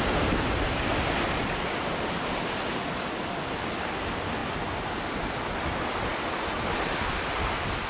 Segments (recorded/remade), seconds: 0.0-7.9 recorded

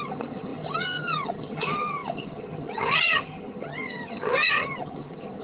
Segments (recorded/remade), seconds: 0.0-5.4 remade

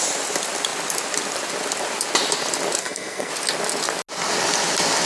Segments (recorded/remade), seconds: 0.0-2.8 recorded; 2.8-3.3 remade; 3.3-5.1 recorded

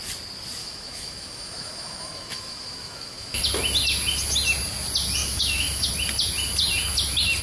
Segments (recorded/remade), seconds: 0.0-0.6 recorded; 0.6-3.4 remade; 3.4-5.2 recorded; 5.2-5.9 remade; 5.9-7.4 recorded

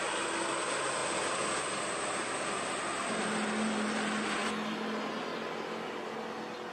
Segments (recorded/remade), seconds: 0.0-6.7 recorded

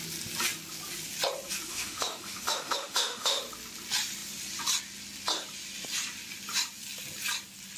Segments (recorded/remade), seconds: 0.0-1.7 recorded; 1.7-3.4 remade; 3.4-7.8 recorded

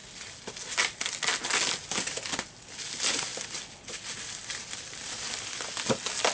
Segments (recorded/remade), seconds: 0.0-6.3 recorded